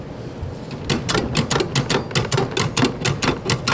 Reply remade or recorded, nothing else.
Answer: recorded